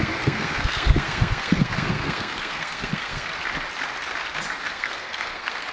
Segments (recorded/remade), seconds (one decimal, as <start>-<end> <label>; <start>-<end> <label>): 0.0-3.3 remade; 3.3-4.6 recorded; 4.6-5.7 remade